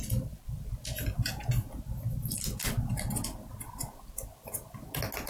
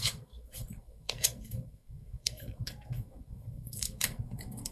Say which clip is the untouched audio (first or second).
first